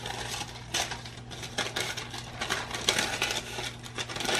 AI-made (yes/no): no